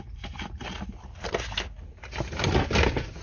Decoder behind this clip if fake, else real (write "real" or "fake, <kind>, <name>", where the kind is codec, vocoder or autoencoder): real